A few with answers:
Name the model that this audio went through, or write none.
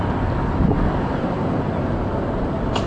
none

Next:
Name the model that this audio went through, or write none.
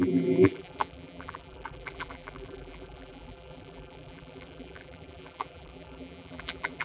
vocoder, BigVGAN v2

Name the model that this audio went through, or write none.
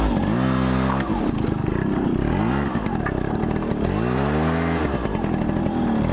none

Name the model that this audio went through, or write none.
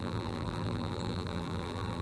vocoder, BigVGAN v2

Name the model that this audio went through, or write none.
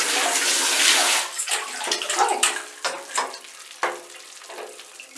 none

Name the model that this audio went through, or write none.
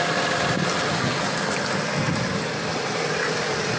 none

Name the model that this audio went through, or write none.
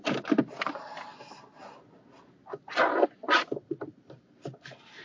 none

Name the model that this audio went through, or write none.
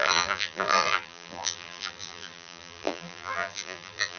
vocoder, BigVGAN v2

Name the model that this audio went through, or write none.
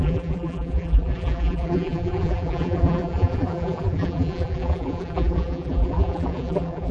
vocoder, BigVGAN v2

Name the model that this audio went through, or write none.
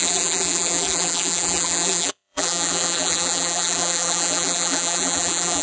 vocoder, BigVGAN v2